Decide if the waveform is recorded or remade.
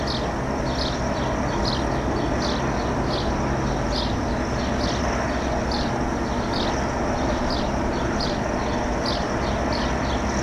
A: recorded